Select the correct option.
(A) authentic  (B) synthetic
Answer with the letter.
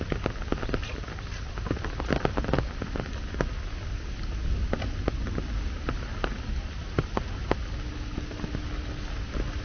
A